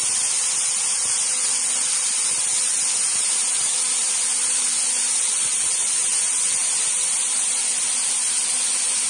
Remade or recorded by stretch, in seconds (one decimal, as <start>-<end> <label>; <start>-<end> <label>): 0.0-9.1 recorded